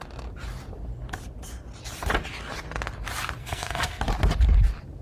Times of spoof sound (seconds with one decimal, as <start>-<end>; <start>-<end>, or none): 3.4-4.0